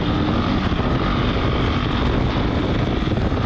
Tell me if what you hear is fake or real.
real